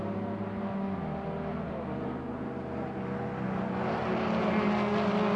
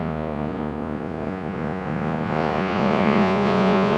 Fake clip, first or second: second